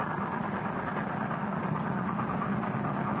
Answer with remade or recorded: recorded